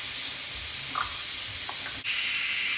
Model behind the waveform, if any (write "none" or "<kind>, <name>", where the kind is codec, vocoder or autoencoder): none